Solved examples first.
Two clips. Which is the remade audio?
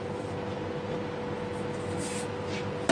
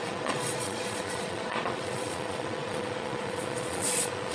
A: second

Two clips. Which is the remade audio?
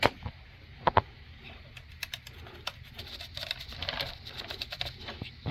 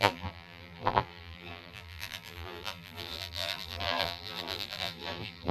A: second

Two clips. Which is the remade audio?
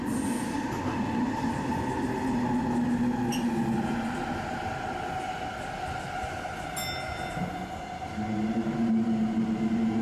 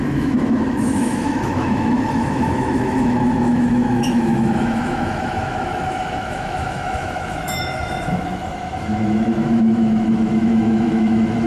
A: second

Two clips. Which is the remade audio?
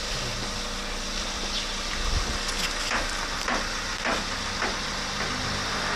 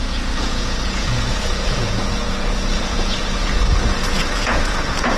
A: second